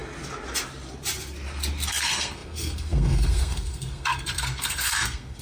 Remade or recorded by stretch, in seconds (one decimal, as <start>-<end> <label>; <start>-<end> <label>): 0.0-1.9 recorded; 1.9-5.4 remade